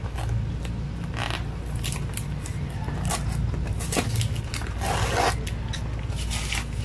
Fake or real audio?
real